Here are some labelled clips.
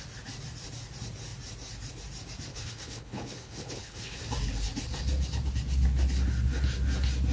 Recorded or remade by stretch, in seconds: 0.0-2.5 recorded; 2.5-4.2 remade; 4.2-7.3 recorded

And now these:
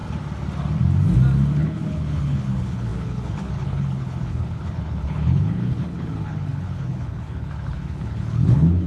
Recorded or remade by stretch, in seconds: 0.0-1.6 recorded; 1.6-8.9 remade